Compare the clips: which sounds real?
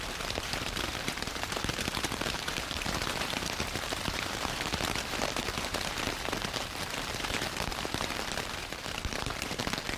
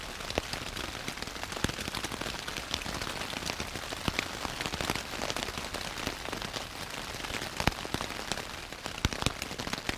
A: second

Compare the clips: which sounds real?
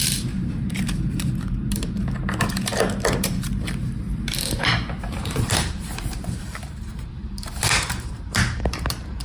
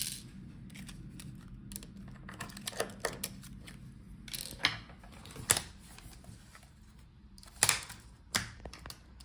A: second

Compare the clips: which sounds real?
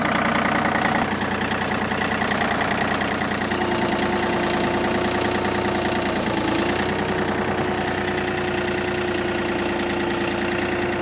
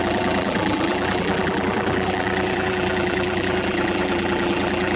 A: first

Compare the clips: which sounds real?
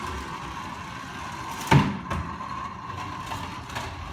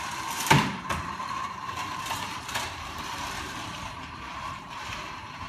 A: first